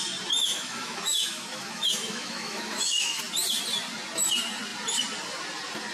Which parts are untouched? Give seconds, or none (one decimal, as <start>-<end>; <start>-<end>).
0.0-0.4; 3.2-5.9